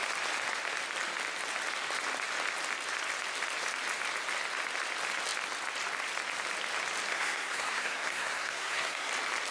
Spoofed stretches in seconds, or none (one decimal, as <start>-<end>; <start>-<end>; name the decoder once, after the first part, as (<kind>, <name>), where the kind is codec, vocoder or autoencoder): 7.1-9.1 (codec, SNAC)